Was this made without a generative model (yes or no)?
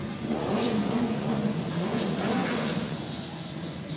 no